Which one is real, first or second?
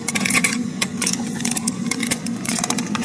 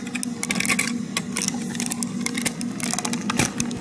second